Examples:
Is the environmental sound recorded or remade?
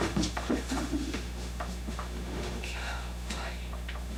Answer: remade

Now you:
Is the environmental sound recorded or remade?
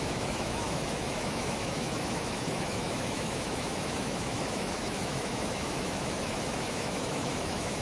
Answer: remade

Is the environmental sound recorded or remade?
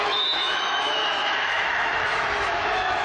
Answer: remade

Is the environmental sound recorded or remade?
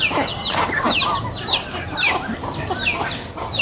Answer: recorded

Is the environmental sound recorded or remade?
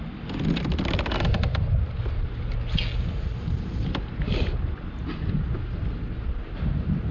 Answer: recorded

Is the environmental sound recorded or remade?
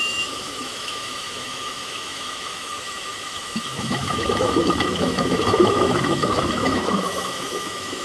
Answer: remade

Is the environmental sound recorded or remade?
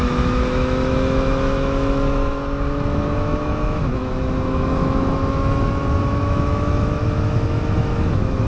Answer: remade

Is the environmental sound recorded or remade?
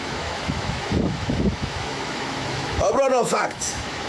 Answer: remade